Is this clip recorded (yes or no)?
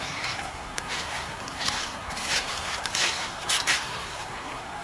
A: no